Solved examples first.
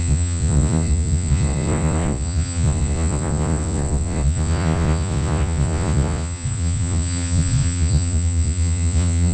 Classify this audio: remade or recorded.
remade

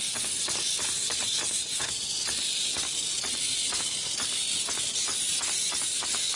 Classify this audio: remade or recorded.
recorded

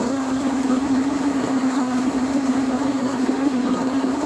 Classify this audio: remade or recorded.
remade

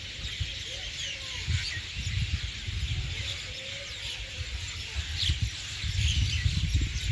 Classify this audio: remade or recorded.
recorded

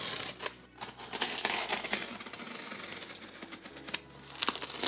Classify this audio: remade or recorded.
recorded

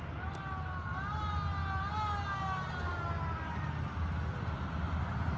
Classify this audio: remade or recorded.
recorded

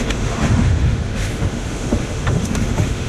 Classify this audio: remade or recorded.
remade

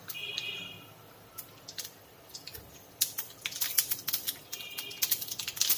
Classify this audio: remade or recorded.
recorded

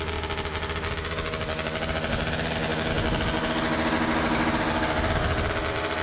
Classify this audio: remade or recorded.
recorded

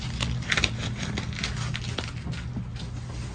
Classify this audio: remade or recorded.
recorded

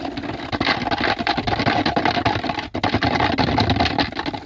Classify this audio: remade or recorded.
recorded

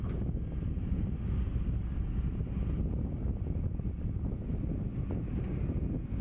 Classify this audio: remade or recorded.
recorded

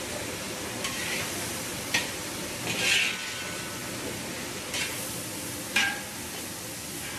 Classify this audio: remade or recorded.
recorded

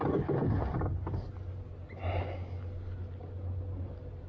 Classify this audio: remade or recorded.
recorded